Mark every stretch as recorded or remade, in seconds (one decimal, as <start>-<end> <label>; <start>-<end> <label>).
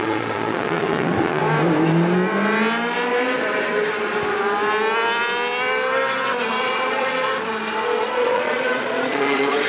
0.0-1.4 remade; 1.4-6.6 recorded; 6.6-7.3 remade; 7.3-8.0 recorded; 8.0-9.7 remade